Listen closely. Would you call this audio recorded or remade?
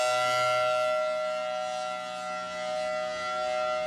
recorded